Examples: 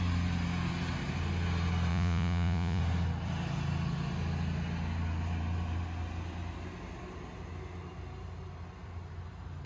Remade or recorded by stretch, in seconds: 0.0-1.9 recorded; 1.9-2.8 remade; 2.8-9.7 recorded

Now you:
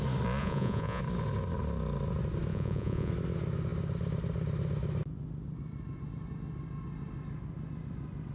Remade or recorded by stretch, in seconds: 0.0-0.4 recorded; 0.4-1.0 remade; 1.0-2.5 recorded; 2.5-3.1 remade; 3.1-8.3 recorded

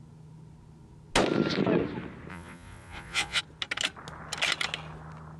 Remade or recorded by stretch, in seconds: 0.0-2.3 recorded; 2.3-3.4 remade; 3.4-5.4 recorded

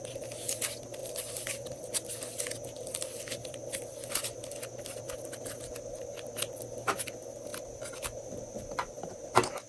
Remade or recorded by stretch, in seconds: 0.0-9.7 recorded

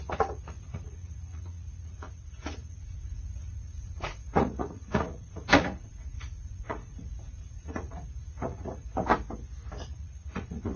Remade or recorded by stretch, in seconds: 0.0-9.1 remade; 9.1-9.8 recorded; 9.8-10.8 remade

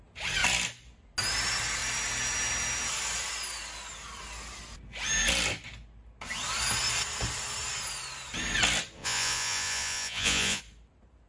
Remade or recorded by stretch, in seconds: 0.0-9.0 recorded; 9.0-10.6 remade; 10.6-11.3 recorded